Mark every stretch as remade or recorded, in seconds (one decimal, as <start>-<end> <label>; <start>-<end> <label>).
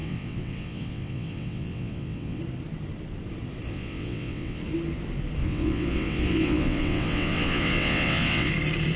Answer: 0.0-2.4 remade; 2.4-3.7 recorded; 3.7-4.6 remade; 4.6-5.4 recorded; 5.4-8.5 remade; 8.5-9.0 recorded